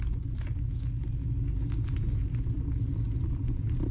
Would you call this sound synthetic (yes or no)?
no